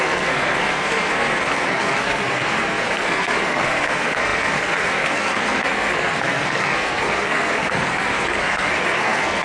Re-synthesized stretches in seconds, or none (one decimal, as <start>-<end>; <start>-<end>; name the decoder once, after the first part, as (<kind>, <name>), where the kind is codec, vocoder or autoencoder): 0.0-9.4 (codec, SNAC)